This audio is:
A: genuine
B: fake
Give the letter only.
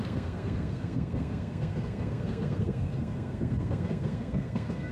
B